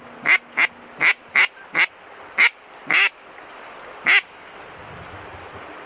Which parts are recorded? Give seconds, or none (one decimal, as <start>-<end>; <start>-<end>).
0.0-5.9